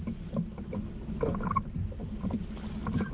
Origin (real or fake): real